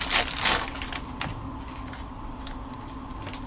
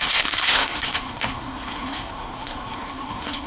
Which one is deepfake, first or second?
second